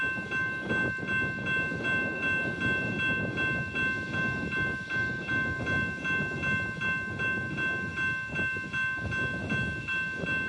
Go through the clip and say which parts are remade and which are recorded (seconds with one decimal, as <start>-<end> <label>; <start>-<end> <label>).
0.0-10.5 recorded